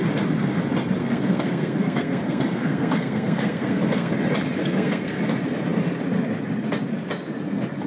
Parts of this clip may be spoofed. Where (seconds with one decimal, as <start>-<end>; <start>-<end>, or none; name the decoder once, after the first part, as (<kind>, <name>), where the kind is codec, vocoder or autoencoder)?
1.0-4.1 (codec, SNAC); 4.6-5.2